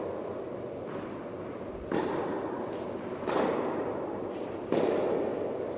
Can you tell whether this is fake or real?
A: real